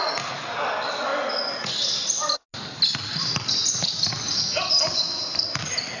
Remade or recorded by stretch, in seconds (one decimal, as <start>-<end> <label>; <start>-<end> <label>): 0.0-1.1 remade; 1.1-4.7 recorded; 4.7-6.0 remade